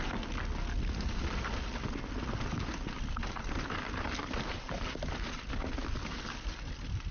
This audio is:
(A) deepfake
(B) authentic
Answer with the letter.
B